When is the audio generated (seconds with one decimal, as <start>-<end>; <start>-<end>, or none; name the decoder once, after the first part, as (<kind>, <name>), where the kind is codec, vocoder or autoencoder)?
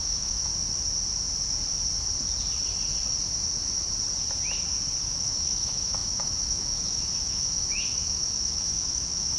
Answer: 0.0-0.5 (autoencoder, DAC-VAE); 5.1-9.4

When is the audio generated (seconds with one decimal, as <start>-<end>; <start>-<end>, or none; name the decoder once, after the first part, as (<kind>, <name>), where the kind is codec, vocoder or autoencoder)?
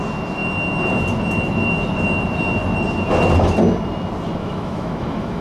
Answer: 4.4-5.4 (autoencoder, DAC-VAE)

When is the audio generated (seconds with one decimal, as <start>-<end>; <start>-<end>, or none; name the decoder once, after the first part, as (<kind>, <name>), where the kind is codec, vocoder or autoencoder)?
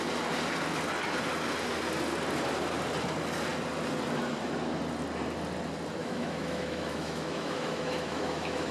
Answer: 6.0-8.7 (autoencoder, DAC-VAE)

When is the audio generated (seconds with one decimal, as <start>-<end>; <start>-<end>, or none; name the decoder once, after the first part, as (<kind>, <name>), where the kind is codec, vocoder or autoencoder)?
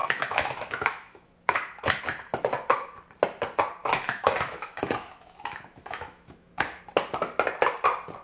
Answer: 0.0-2.0 (autoencoder, DAC-VAE); 3.8-6.8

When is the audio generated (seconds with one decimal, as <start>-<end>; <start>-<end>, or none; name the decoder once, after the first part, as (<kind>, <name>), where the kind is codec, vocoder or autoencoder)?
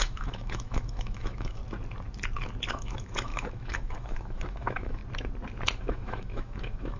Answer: 0.0-1.6 (autoencoder, DAC-VAE); 2.7-5.0; 5.8-7.0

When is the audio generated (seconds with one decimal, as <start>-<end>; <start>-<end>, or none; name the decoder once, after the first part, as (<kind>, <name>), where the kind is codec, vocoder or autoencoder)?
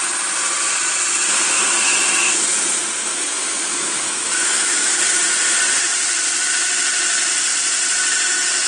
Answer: 3.0-5.0 (autoencoder, DAC-VAE)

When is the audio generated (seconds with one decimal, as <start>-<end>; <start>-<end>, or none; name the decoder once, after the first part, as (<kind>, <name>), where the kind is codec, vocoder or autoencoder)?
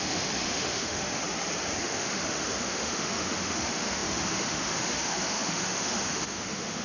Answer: 0.0-1.2 (autoencoder, DAC-VAE); 1.8-6.8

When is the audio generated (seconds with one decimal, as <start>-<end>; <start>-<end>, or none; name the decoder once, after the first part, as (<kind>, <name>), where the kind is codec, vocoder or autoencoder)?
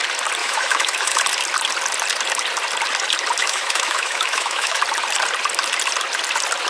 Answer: 0.4-1.2 (autoencoder, DAC-VAE); 3.4-4.8